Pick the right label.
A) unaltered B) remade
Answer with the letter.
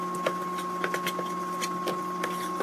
A